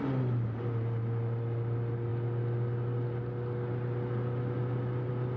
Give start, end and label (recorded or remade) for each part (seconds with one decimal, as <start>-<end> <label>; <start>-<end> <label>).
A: 0.0-5.4 recorded

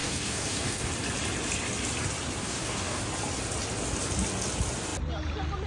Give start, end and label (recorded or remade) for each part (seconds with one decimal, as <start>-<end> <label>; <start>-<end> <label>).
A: 0.0-0.9 remade; 0.9-2.4 recorded; 2.4-3.0 remade; 3.0-5.7 recorded

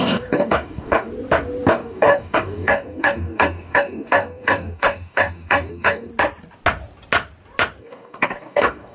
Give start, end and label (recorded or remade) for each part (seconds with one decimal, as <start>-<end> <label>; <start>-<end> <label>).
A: 0.0-1.1 remade; 1.1-1.7 recorded; 1.7-6.1 remade; 6.1-7.8 recorded; 7.8-8.9 remade

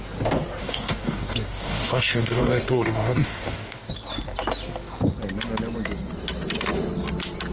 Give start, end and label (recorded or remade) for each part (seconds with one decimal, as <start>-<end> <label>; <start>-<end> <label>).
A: 0.0-0.6 recorded; 0.6-3.9 remade; 3.9-7.5 recorded